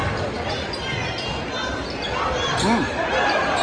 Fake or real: real